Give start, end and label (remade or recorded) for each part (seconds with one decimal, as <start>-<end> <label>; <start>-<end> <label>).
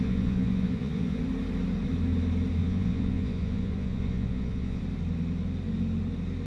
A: 0.0-1.2 remade; 1.2-2.6 recorded; 2.6-4.8 remade; 4.8-6.5 recorded